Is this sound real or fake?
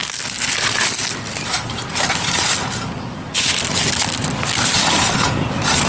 real